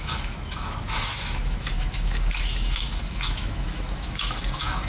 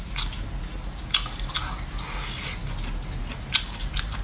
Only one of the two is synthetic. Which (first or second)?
first